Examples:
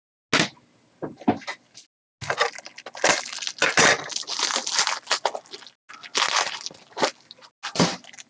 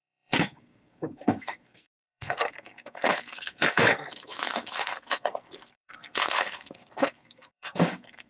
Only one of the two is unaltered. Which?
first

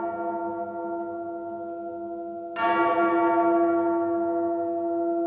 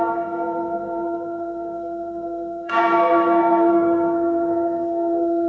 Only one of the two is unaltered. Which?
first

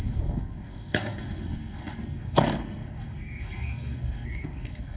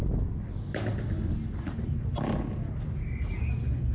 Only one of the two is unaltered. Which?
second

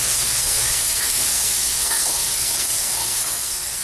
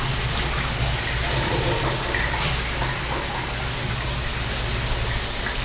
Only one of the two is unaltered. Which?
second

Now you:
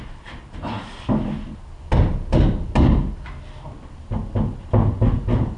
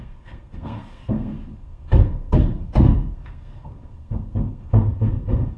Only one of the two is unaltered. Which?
first